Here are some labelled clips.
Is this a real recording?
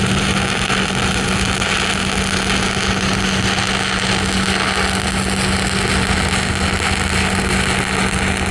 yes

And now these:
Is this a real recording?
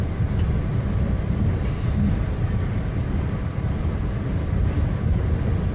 yes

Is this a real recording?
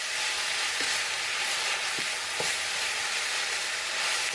yes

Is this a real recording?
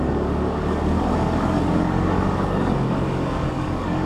no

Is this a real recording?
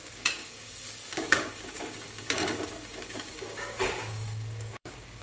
no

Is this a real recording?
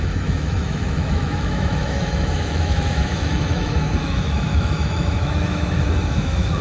no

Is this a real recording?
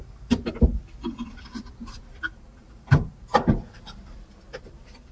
no